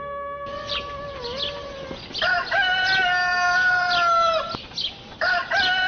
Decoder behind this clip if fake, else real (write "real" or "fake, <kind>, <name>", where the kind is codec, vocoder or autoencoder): real